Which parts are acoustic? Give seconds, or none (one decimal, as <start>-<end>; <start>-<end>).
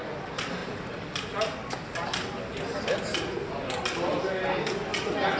0.0-5.4